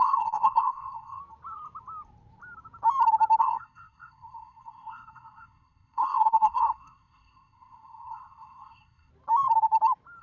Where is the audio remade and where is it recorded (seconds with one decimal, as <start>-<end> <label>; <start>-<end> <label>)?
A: 0.0-1.2 remade; 1.2-3.4 recorded; 3.4-9.1 remade; 9.1-10.2 recorded